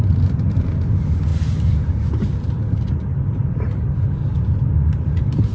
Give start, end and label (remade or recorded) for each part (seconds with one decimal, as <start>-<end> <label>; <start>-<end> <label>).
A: 0.0-5.5 recorded